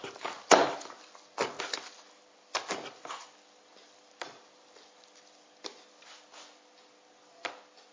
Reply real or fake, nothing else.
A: real